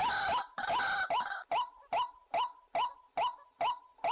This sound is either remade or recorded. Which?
recorded